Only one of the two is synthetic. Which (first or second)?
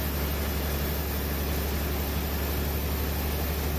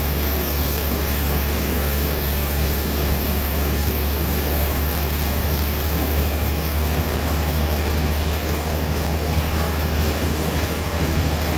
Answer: second